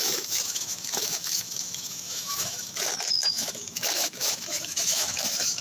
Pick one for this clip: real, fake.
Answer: fake